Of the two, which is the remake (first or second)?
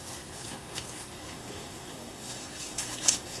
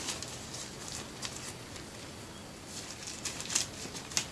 first